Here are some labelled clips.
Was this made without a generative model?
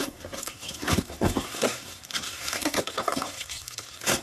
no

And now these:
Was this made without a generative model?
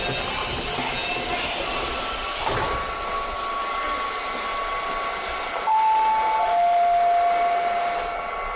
yes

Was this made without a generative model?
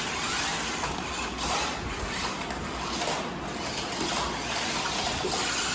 yes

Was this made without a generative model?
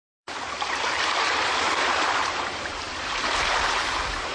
no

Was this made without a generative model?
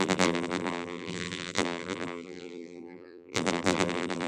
no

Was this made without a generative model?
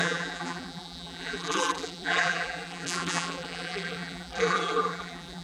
no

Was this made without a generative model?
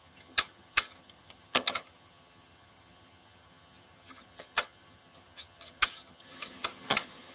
no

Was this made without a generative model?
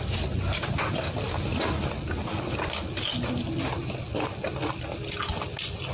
yes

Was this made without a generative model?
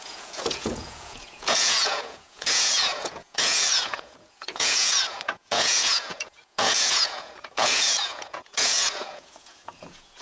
no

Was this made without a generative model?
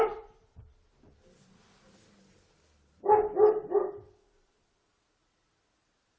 yes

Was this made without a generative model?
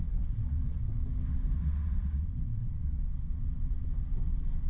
no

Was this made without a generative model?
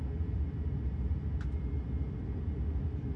yes